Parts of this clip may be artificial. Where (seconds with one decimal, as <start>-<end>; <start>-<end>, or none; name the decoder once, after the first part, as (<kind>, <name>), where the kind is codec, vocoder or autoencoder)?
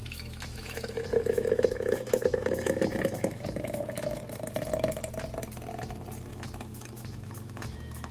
0.0-4.2 (autoencoder, DAC-VAE); 6.3-8.1